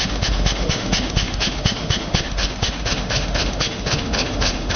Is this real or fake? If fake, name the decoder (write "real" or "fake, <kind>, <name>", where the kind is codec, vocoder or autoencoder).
fake, autoencoder, DAC-VAE